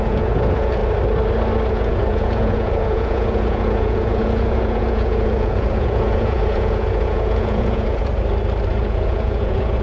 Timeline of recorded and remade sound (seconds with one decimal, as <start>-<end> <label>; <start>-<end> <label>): 0.0-0.8 remade; 0.8-1.7 recorded; 1.7-8.1 remade; 8.1-8.7 recorded; 8.7-9.8 remade